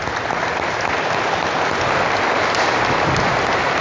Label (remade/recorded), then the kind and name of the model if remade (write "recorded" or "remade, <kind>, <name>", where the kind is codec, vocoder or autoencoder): recorded